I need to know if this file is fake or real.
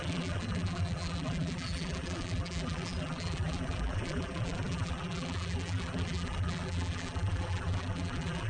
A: fake